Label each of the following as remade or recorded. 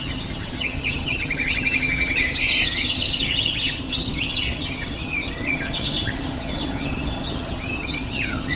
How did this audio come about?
remade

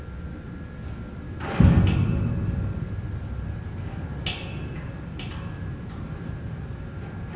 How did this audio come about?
recorded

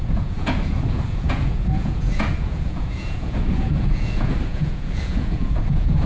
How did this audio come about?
remade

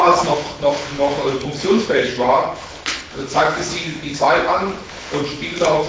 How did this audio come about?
remade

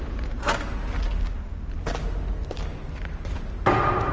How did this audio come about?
recorded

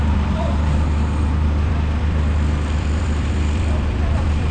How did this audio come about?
remade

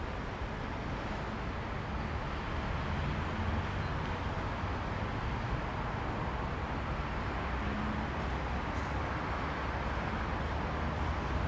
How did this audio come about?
recorded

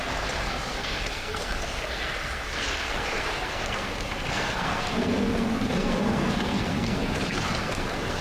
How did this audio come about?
remade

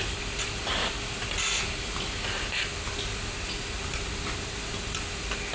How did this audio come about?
recorded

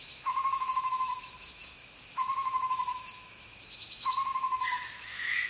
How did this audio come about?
remade